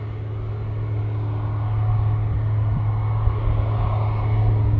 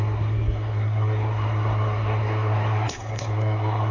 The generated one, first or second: second